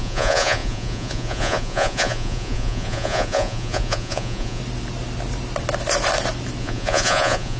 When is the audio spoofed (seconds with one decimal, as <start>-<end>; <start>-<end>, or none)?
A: 0.0-4.6; 6.6-7.6